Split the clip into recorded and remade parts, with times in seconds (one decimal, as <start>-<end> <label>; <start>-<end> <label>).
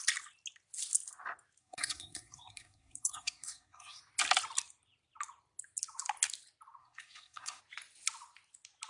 0.0-1.6 recorded; 1.6-4.0 remade; 4.0-6.8 recorded; 6.8-7.6 remade; 7.6-8.9 recorded